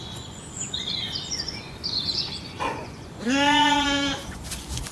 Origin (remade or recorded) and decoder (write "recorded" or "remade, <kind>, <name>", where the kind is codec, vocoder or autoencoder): remade, vocoder, Vocos